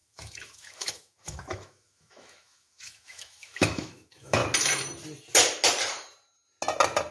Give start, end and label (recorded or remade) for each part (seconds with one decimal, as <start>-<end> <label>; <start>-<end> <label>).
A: 0.0-4.4 remade; 4.4-7.1 recorded